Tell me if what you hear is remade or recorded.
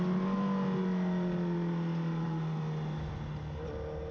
recorded